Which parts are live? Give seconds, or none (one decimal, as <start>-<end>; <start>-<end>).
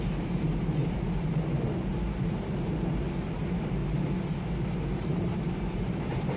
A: 3.8-4.8